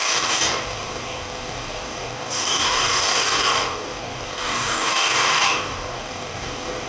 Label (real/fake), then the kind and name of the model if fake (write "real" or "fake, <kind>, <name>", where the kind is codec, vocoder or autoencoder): fake, codec, DAC